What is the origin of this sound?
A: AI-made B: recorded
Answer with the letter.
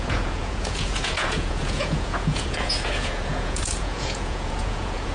A